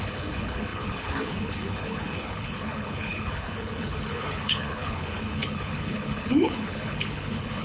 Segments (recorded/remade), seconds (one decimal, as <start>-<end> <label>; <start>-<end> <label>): 0.0-7.6 remade